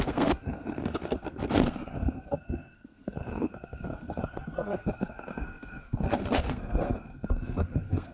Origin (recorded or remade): remade